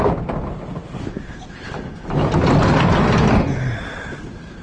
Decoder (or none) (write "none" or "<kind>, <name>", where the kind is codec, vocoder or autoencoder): none